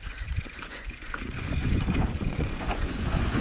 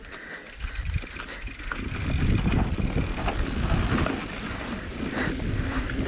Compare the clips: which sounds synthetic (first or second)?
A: first